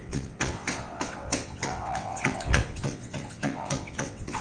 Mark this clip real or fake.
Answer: fake